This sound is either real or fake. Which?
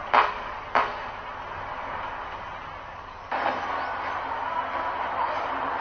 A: real